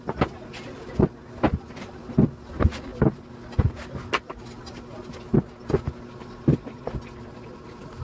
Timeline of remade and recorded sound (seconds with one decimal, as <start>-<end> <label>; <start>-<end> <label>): 0.0-8.0 recorded